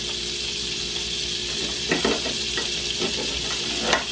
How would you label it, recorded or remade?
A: recorded